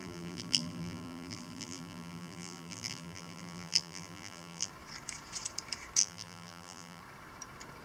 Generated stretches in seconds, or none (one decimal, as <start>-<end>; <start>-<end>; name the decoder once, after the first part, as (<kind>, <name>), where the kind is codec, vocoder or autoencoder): 0.0-4.7 (vocoder, BigVGAN v2); 6.0-7.0